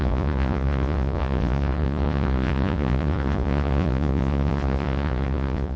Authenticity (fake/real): fake